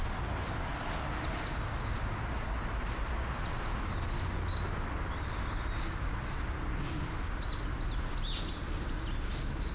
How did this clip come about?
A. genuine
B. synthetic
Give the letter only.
A